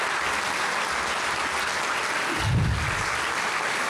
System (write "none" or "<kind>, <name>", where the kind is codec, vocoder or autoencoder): none